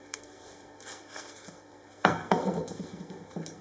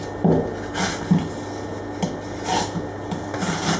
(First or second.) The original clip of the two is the second